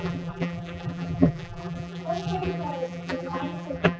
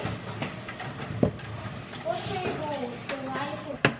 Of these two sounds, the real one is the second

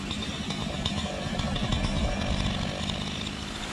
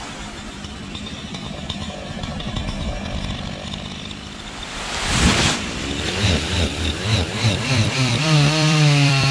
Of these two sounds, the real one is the first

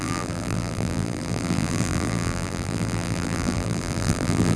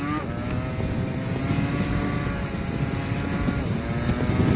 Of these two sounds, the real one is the second